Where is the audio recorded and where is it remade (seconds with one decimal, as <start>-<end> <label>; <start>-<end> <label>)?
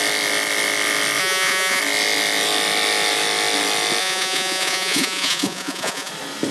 0.0-1.2 recorded; 1.2-1.8 remade; 1.8-4.0 recorded; 4.0-6.1 remade; 6.1-6.5 recorded